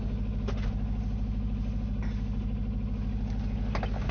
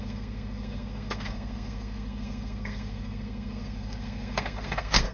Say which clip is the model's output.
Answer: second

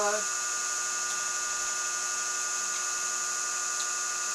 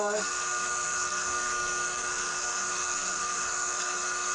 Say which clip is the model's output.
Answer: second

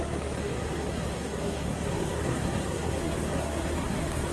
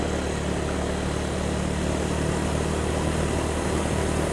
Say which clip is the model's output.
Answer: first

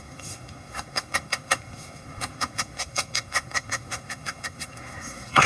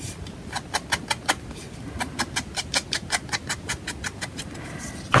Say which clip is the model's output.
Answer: first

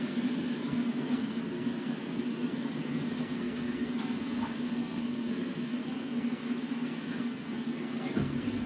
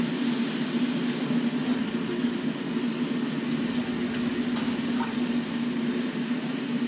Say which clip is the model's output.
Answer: first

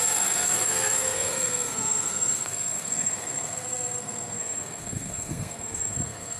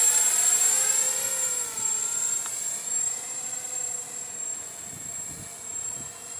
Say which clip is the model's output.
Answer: first